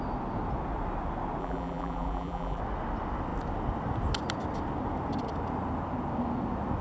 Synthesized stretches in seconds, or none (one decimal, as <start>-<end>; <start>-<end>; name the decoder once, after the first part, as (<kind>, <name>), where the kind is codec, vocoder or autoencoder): 1.4-2.6 (vocoder, BigVGAN v2)